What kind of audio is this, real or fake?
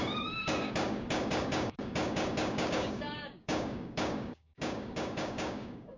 fake